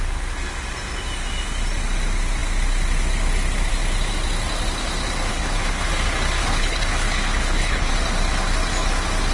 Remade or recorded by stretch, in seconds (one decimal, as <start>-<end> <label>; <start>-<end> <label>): 0.0-5.3 recorded; 5.3-5.9 remade; 5.9-6.4 recorded; 6.4-7.9 remade; 7.9-9.3 recorded